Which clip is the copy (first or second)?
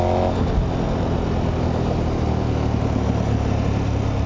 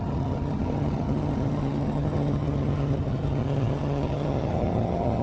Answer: second